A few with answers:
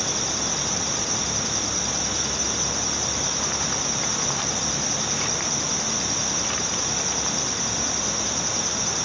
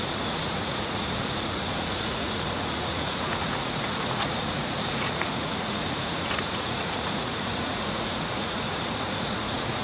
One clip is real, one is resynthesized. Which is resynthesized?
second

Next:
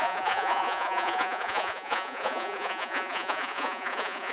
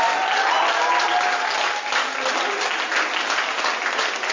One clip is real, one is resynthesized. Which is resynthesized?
first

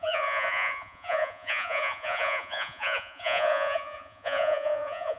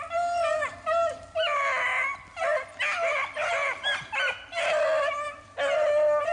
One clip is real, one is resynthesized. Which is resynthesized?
first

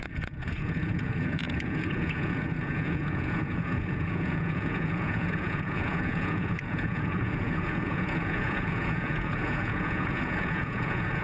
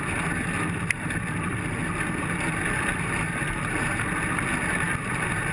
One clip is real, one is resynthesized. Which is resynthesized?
first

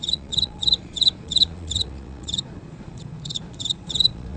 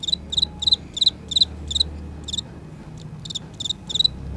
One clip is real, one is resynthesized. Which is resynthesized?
first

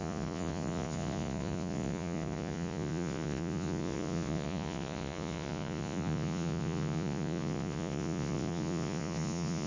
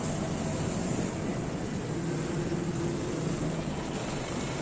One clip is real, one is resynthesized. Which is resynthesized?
first